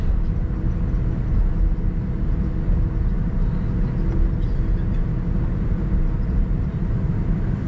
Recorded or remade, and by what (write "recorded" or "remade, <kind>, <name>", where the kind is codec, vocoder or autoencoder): recorded